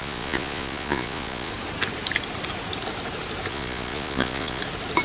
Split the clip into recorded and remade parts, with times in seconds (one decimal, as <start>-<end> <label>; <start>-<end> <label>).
0.0-1.5 remade; 1.5-3.5 recorded; 3.5-4.6 remade; 4.6-5.0 recorded